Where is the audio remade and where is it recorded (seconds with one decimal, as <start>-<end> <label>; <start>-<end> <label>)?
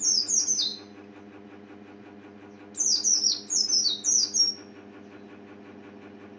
0.0-6.4 recorded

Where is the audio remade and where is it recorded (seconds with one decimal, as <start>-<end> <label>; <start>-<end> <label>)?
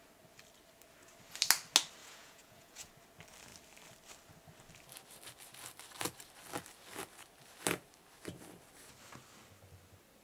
0.0-2.0 recorded; 2.0-2.9 remade; 2.9-10.2 recorded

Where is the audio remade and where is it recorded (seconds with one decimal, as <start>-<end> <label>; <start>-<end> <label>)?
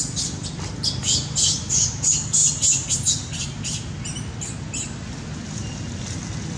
0.0-6.6 recorded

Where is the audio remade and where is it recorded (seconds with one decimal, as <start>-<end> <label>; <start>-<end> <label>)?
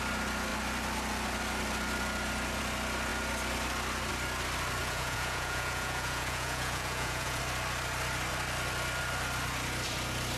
0.0-4.8 recorded; 4.8-7.4 remade; 7.4-10.4 recorded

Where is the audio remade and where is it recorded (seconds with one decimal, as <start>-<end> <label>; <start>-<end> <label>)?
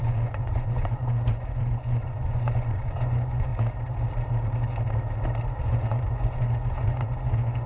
0.0-3.5 remade; 3.5-5.6 recorded; 5.6-7.7 remade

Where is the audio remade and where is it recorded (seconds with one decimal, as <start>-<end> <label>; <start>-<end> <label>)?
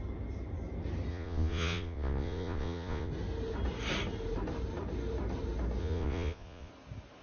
0.0-1.1 recorded; 1.1-3.1 remade; 3.1-5.8 recorded; 5.8-6.7 remade; 6.7-7.2 recorded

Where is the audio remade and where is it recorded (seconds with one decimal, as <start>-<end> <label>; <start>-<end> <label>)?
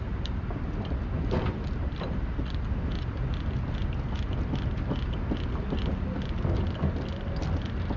0.0-8.0 recorded